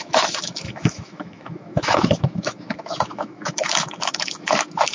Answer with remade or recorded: remade